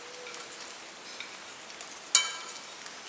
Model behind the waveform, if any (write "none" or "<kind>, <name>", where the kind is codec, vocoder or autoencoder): none